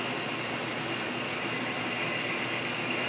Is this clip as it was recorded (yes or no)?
yes